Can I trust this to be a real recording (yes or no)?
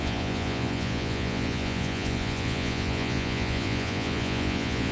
no